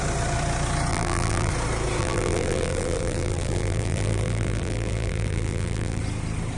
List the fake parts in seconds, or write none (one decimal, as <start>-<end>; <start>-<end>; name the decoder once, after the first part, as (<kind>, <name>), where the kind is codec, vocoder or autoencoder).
0.9-1.5 (vocoder, BigVGAN v2); 2.0-6.0